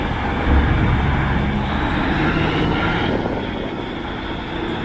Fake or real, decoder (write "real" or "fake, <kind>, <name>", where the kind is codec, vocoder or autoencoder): real